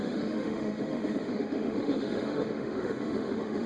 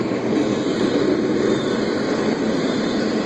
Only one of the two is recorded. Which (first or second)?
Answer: second